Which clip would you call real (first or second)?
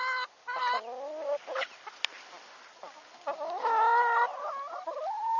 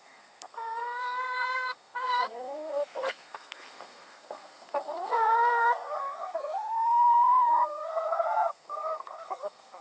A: first